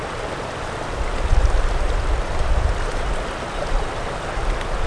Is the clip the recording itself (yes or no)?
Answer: yes